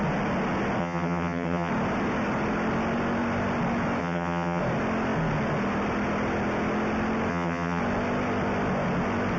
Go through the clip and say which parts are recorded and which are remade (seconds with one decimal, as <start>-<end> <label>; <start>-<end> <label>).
0.0-0.8 recorded; 0.8-1.7 remade; 1.7-4.0 recorded; 4.0-4.6 remade; 4.6-7.3 recorded; 7.3-7.8 remade; 7.8-9.4 recorded